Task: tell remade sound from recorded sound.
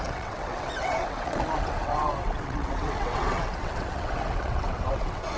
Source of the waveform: remade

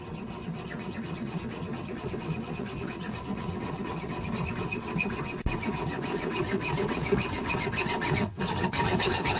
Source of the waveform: remade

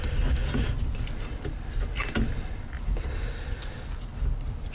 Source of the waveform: recorded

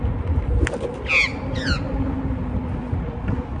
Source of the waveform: recorded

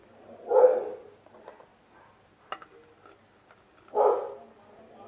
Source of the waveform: recorded